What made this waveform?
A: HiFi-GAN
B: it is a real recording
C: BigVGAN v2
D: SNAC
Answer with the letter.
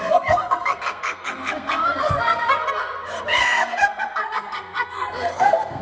D